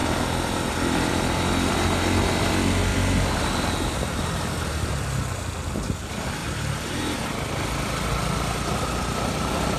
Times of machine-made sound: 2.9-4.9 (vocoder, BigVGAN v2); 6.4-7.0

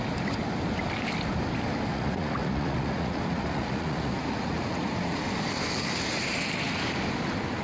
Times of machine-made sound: 1.9-5.2 (vocoder, Vocos)

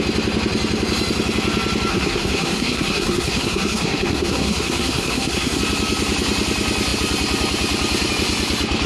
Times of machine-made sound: 1.9-5.6 (codec, SNAC)

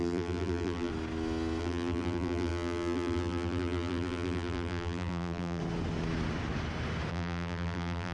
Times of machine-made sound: 0.0-0.9 (vocoder, BigVGAN v2); 1.6-5.6; 7.1-8.1

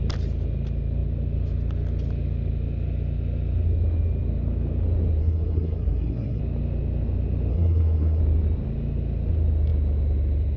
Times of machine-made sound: 5.2-6.4 (codec, SNAC); 7.5-8.2

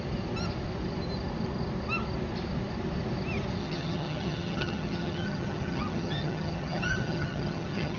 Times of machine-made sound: 3.6-8.0 (vocoder, HiFi-GAN)

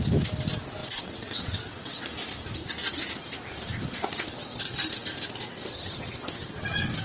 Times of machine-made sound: 0.8-2.0 (vocoder, WaveNeXt)

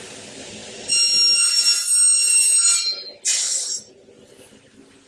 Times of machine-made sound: none